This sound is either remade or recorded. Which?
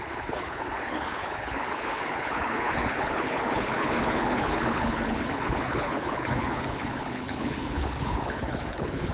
remade